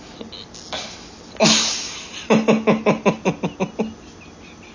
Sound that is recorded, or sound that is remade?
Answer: recorded